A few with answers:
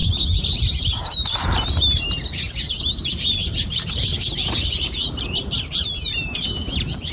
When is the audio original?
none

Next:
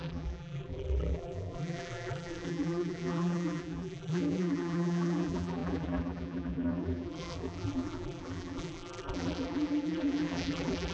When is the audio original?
none

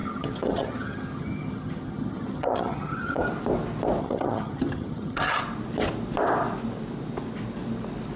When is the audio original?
3.2-4.0; 5.4-8.2

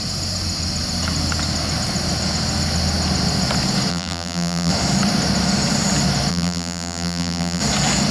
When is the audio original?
0.0-3.9; 4.7-6.3; 7.6-8.1